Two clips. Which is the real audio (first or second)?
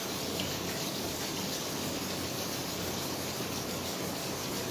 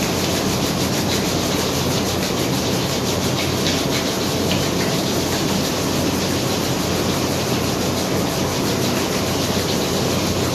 second